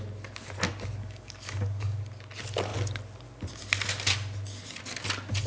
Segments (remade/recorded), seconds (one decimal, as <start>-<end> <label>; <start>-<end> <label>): 0.0-1.0 recorded; 1.0-2.0 remade; 2.0-5.5 recorded